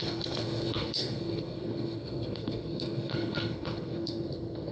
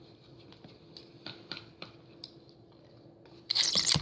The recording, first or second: second